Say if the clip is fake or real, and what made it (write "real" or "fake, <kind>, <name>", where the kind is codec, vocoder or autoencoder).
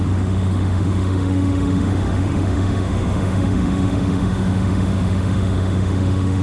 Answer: fake, autoencoder, DAC-VAE